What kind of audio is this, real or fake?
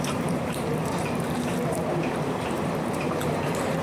fake